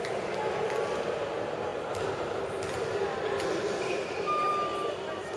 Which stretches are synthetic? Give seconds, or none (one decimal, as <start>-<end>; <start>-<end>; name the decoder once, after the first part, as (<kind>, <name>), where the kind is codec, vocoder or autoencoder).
none